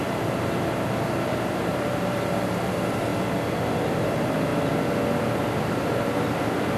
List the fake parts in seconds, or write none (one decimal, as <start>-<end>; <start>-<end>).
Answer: 0.0-3.1; 4.0-4.5; 5.6-6.8